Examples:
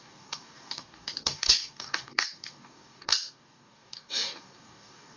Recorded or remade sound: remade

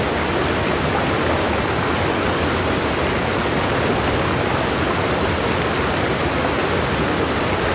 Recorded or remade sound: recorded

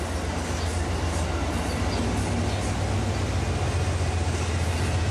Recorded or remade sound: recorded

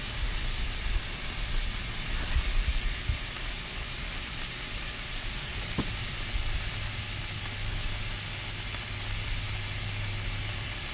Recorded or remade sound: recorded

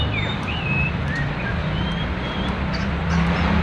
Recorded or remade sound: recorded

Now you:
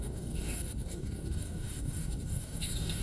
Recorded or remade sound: remade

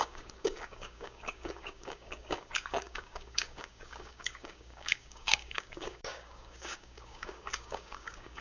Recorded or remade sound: remade